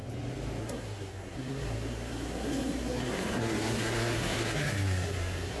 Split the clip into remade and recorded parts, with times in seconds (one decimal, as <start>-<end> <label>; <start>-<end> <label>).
0.0-0.6 recorded; 0.6-5.6 remade